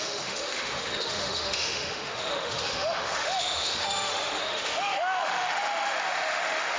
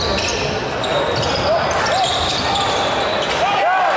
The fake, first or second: first